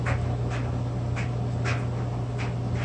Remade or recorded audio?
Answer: recorded